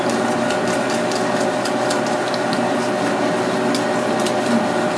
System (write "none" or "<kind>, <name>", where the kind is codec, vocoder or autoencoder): none